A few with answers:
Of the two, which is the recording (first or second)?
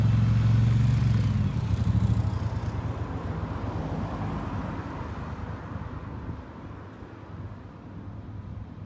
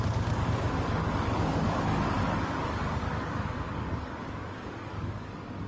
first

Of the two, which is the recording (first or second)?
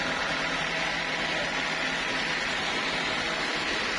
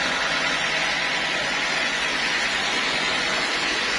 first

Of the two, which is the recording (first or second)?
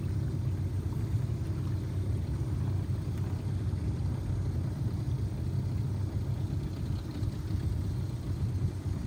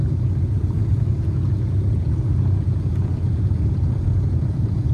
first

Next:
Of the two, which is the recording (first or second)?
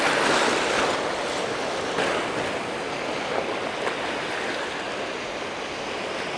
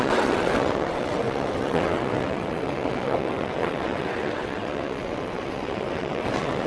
first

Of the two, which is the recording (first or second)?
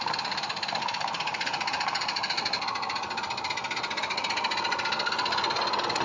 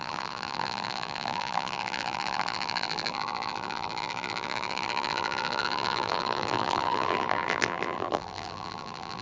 first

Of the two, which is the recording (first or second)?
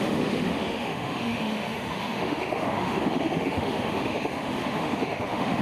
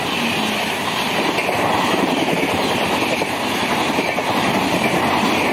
second